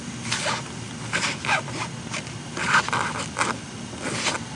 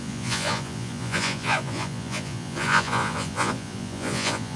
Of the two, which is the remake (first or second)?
second